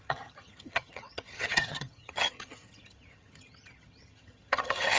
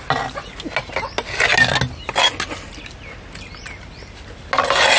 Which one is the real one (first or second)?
second